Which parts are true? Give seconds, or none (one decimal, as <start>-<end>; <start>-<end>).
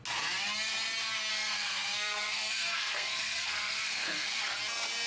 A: 0.0-1.3; 4.4-5.1